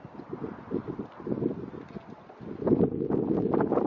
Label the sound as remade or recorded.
recorded